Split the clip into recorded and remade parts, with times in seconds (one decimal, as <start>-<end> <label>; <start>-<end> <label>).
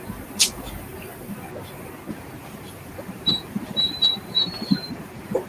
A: 0.0-2.1 recorded; 2.1-5.5 remade